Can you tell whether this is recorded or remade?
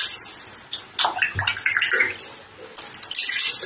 recorded